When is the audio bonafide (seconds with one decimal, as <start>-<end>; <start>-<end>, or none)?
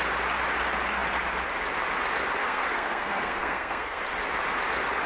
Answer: 0.0-2.4; 4.0-5.1